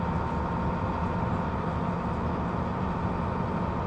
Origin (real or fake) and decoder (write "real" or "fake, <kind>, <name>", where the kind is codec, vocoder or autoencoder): real